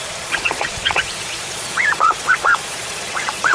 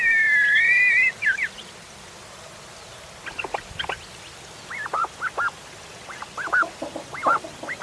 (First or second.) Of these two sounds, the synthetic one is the first